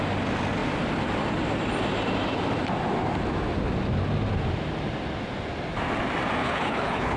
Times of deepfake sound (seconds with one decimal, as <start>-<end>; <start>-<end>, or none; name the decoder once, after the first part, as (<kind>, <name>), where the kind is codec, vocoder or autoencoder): 6.4-7.2 (codec, HILCodec)